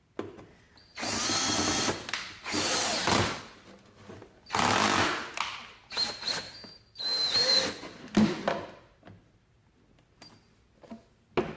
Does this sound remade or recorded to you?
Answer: recorded